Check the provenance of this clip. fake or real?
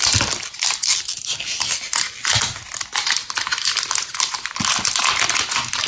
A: real